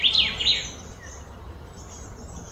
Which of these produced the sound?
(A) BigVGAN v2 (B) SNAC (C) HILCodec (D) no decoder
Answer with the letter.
D